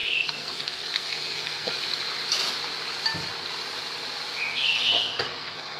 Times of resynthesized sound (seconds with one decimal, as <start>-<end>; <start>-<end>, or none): 0.0-1.7; 4.5-5.8